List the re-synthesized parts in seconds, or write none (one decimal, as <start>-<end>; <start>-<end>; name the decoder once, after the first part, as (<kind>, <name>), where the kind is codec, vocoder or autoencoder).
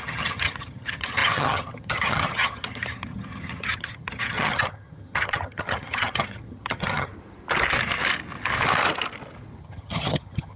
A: 0.0-7.1 (vocoder, HiFi-GAN); 9.6-10.6